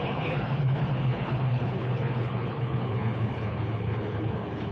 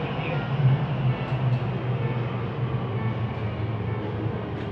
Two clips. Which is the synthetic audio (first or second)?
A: first